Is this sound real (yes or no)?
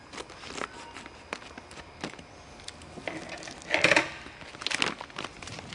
yes